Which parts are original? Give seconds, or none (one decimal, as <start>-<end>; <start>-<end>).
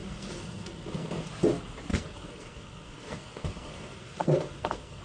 1.3-1.9